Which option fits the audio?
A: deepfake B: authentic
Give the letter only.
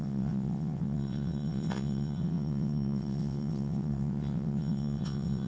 A